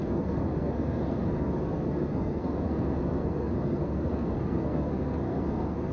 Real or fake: fake